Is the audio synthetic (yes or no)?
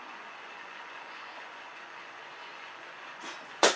yes